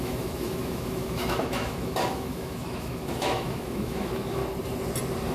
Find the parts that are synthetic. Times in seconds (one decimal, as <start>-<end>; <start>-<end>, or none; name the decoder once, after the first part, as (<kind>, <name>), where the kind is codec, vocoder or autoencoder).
0.0-4.4 (autoencoder, DAC-VAE)